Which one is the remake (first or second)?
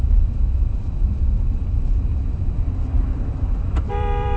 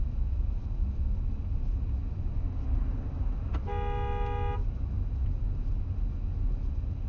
first